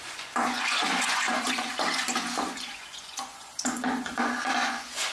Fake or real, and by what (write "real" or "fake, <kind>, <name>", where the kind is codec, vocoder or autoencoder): fake, vocoder, Vocos